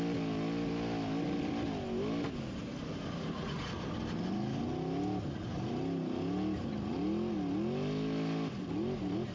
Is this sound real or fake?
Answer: real